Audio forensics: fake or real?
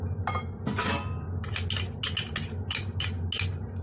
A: real